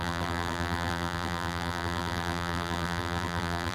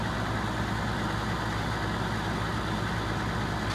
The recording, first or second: second